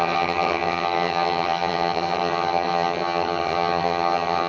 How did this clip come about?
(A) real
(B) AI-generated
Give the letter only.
B